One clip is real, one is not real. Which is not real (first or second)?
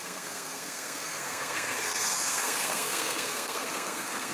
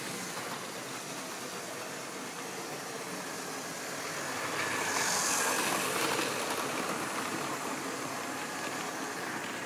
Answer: first